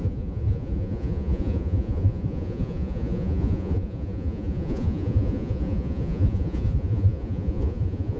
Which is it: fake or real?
fake